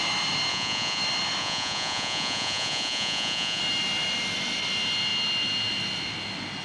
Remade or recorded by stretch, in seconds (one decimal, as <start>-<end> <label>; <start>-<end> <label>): 0.0-0.5 recorded; 0.5-1.0 remade; 1.0-1.4 recorded; 1.4-3.6 remade; 3.6-6.6 recorded